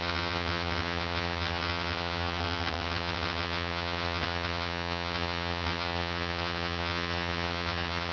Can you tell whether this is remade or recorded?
remade